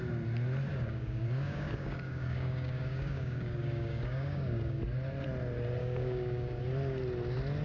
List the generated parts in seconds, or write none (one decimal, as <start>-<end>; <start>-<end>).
0.7-4.8; 5.8-6.6